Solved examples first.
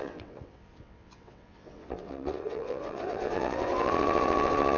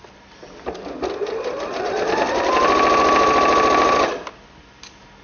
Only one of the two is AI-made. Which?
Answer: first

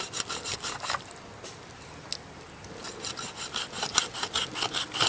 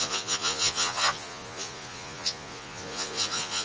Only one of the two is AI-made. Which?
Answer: second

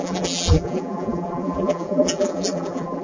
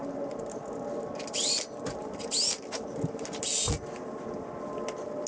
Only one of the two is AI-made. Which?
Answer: first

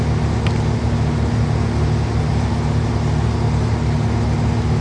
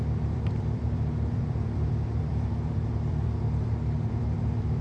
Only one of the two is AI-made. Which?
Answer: second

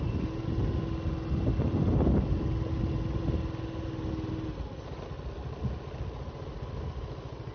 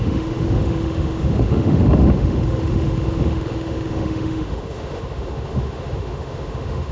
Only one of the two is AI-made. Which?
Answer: second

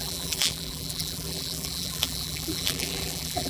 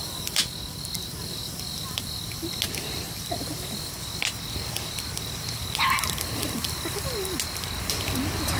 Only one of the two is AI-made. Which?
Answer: first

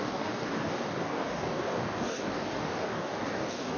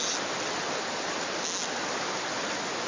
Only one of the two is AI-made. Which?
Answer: first